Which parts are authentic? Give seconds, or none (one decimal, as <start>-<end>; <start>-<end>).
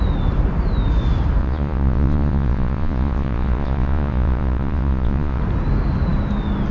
0.0-1.4; 5.4-6.7